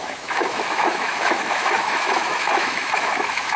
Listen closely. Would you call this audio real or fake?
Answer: fake